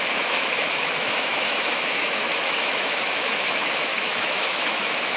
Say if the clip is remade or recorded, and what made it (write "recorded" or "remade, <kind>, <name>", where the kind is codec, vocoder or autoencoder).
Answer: remade, autoencoder, DAC-VAE